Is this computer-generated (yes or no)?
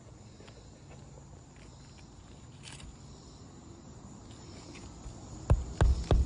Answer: no